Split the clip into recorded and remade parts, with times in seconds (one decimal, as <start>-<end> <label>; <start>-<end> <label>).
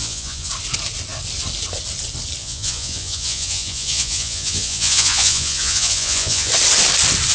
0.0-0.5 remade; 0.5-2.4 recorded; 2.4-6.5 remade; 6.5-7.3 recorded